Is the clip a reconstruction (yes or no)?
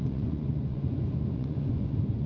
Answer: yes